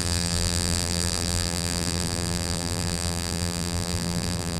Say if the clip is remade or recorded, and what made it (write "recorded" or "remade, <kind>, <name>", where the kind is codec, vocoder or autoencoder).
remade, vocoder, BigVGAN v2